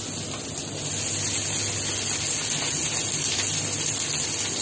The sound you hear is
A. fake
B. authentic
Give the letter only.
B